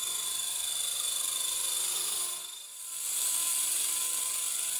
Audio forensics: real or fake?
fake